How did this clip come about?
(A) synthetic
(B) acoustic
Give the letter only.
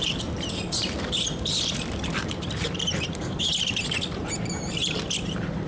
A